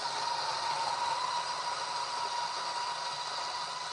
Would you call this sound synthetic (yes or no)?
no